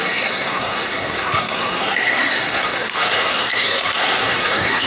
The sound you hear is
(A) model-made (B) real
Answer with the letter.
A